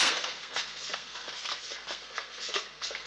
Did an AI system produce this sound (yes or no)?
yes